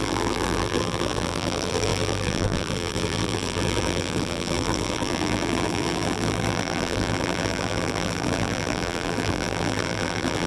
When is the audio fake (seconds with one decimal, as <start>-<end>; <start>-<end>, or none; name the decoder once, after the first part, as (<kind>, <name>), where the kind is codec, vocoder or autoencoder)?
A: 0.0-10.5 (vocoder, BigVGAN v2)